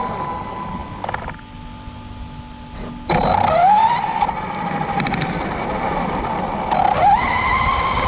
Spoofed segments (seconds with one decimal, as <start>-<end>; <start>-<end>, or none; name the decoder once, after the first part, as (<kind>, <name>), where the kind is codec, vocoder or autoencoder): none